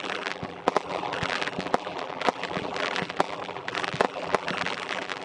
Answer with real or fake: fake